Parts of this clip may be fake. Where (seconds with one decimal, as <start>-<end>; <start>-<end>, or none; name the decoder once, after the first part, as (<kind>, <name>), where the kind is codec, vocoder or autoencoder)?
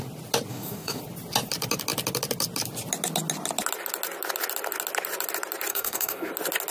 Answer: 0.5-1.0 (codec, DAC); 5.7-6.3